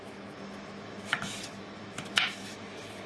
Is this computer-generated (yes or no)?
yes